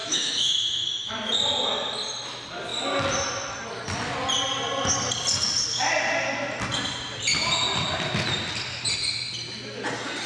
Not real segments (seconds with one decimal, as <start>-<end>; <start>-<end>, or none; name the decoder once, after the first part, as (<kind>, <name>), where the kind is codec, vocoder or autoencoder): 0.0-1.1 (autoencoder, DAC-VAE)